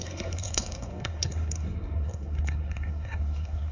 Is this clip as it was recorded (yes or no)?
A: no